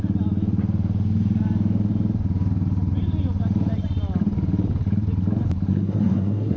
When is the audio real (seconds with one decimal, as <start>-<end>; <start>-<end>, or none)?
0.0-5.7